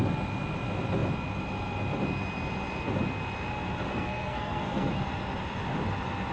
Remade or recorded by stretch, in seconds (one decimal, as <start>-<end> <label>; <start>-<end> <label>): 0.0-3.9 recorded; 3.9-5.0 remade; 5.0-6.3 recorded